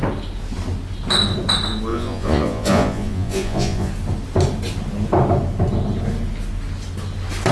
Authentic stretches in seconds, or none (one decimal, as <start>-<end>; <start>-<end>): 0.0-1.9; 3.9-7.5